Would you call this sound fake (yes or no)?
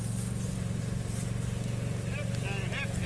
no